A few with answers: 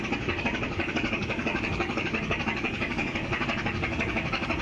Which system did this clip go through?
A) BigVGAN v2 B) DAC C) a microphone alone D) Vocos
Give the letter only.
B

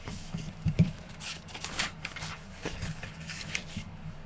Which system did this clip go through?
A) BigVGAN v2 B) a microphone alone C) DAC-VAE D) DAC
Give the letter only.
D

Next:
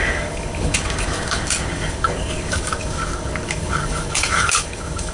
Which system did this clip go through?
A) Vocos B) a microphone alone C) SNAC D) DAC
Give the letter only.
D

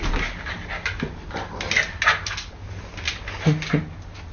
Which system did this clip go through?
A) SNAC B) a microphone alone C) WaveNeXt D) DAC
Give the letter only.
B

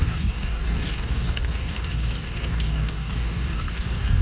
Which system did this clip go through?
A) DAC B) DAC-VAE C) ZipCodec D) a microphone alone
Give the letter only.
A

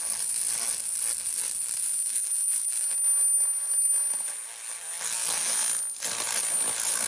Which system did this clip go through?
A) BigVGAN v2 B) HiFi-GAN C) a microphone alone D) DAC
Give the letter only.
C